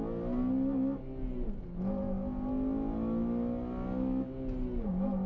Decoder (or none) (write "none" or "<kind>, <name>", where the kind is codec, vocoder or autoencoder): none